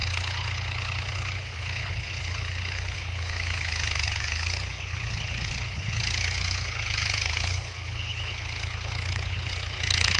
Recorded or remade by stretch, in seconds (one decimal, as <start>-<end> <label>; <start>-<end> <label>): 0.0-10.2 remade